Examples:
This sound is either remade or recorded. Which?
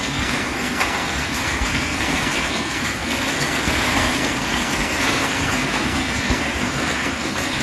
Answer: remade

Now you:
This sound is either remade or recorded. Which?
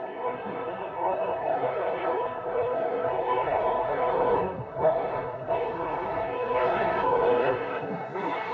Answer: remade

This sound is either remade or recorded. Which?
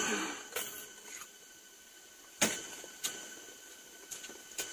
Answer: recorded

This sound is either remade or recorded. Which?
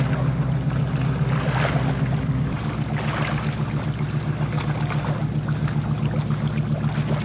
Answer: recorded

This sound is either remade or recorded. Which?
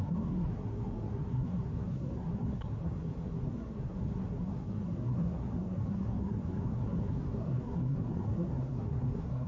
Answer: remade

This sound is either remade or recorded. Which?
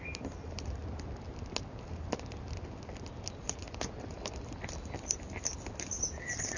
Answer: recorded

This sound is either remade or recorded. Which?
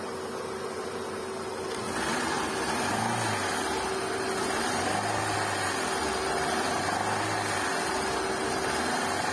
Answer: recorded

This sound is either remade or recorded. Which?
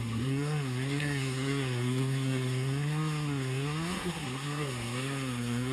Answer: remade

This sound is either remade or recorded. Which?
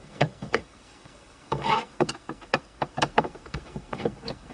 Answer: remade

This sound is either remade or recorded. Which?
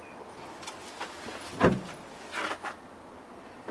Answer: recorded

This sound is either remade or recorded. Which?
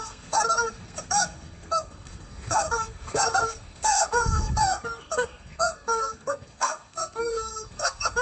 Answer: remade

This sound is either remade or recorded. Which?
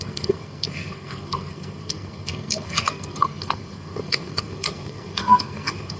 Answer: remade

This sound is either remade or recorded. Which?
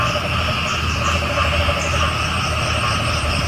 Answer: recorded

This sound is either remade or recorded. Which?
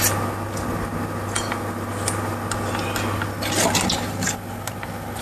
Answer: recorded